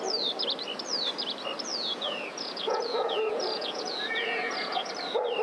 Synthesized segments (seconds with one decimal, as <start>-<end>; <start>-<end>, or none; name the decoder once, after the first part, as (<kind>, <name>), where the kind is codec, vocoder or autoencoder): 1.7-4.9 (vocoder, Vocos)